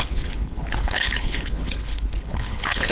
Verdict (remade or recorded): remade